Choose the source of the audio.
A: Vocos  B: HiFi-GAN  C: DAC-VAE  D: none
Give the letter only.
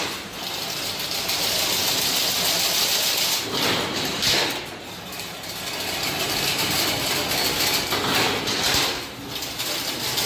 D